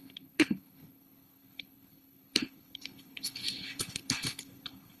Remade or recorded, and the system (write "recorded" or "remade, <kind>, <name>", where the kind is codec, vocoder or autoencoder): remade, codec, HILCodec